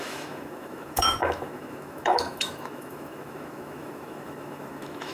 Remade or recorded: remade